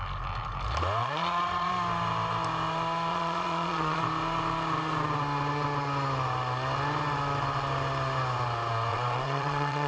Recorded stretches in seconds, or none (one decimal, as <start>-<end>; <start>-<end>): 0.0-1.0; 1.7-3.1; 4.0-8.9